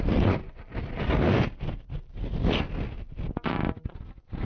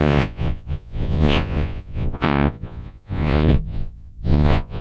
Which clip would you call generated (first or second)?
second